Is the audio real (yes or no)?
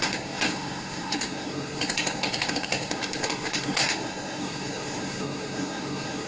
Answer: no